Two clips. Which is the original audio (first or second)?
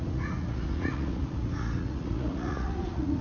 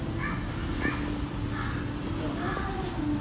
second